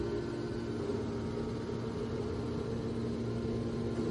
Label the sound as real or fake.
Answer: real